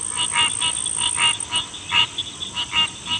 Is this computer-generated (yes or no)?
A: no